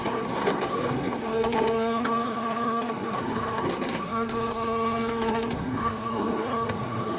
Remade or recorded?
remade